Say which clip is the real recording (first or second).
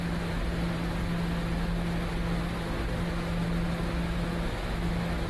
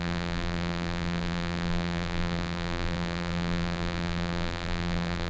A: first